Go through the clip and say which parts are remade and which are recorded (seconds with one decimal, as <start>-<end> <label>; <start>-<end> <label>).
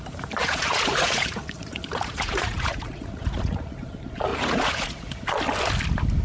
0.0-0.4 recorded; 0.4-3.8 remade; 3.8-4.3 recorded; 4.3-5.1 remade; 5.1-6.2 recorded